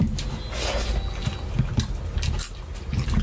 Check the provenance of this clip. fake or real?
real